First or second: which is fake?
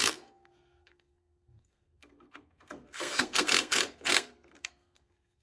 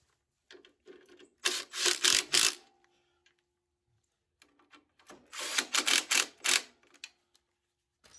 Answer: first